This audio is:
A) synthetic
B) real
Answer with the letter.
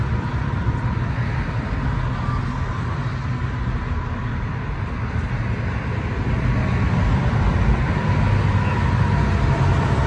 B